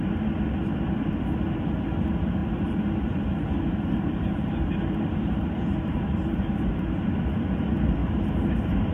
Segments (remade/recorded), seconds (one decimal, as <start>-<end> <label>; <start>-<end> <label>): 0.0-2.4 recorded; 2.4-6.4 remade; 6.4-8.0 recorded; 8.0-8.9 remade